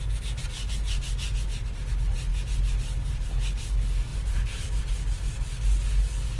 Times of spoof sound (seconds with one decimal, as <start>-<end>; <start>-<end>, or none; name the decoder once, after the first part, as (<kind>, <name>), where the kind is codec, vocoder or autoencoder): 4.1-4.8 (vocoder, BigVGAN v2)